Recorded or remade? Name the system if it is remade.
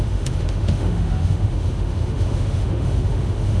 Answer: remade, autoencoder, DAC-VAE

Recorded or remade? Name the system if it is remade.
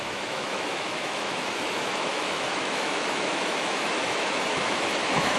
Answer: remade, autoencoder, DAC-VAE